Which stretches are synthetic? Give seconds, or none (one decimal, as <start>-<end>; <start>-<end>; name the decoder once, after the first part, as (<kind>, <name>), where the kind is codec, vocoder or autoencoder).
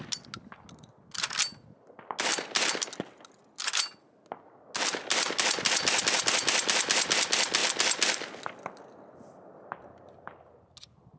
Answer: none